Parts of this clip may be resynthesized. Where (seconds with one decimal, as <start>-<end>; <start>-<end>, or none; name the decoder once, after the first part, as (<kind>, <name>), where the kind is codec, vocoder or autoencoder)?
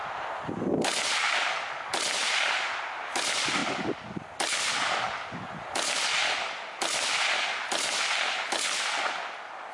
0.0-0.6 (vocoder, BigVGAN v2); 2.2-3.2